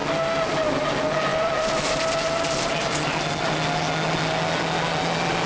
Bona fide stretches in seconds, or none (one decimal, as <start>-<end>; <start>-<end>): 0.0-1.3; 2.7-5.5